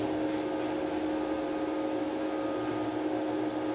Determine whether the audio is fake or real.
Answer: real